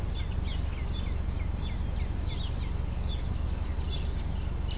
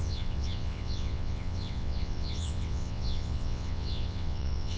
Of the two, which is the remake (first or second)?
second